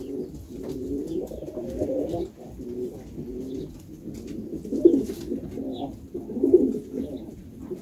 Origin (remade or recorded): recorded